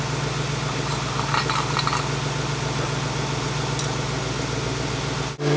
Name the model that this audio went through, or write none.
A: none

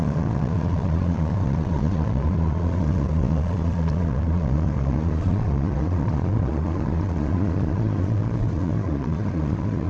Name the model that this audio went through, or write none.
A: vocoder, Vocos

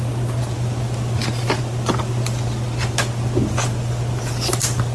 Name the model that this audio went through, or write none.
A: none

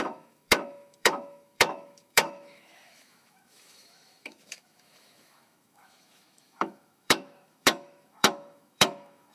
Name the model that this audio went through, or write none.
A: autoencoder, DAC-VAE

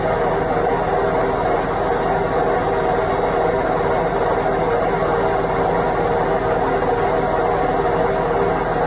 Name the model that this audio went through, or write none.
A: none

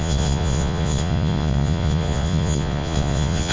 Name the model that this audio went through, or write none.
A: vocoder, Vocos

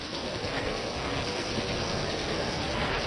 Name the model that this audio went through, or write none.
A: codec, SNAC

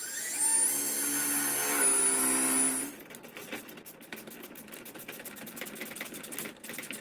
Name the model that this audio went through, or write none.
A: none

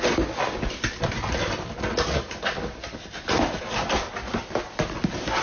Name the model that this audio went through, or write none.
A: none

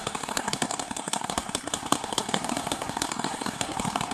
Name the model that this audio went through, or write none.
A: codec, SNAC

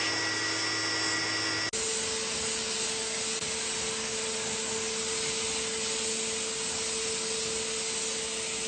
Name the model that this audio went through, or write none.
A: none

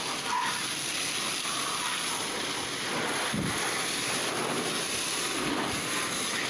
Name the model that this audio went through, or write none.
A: none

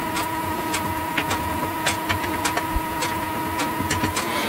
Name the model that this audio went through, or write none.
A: none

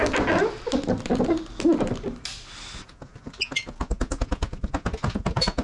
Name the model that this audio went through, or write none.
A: none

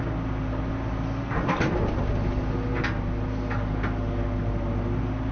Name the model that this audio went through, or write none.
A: none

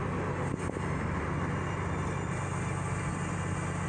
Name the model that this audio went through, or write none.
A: none